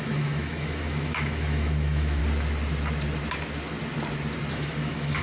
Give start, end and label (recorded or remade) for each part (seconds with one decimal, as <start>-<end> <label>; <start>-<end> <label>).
0.0-2.2 remade; 2.2-4.5 recorded; 4.5-5.2 remade